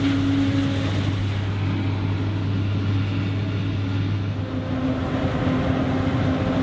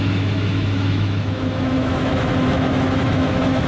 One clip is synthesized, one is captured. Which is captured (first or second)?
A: first